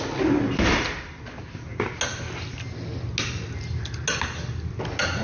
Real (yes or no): yes